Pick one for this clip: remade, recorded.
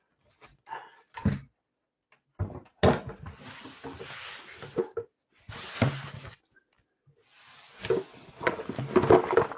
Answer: recorded